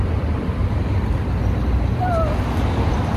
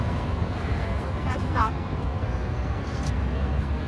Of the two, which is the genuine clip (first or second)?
first